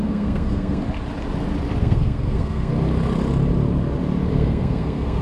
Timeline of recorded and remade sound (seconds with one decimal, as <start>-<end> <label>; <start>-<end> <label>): 0.0-0.8 remade; 0.8-1.8 recorded; 1.8-2.7 remade; 2.7-4.3 recorded; 4.3-5.2 remade